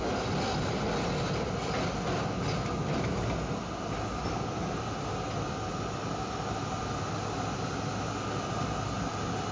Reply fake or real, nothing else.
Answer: real